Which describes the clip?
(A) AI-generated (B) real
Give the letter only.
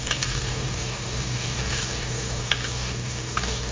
A